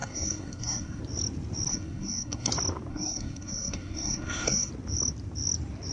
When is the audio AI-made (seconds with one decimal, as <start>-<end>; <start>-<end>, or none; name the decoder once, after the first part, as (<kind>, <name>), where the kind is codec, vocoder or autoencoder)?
0.0-1.0 (codec, SNAC); 1.7-2.5; 2.9-4.7